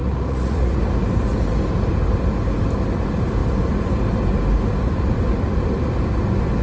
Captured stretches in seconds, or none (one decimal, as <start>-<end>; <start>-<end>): 0.8-6.6